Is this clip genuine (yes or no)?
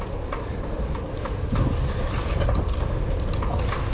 yes